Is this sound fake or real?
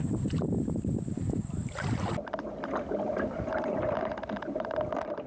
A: real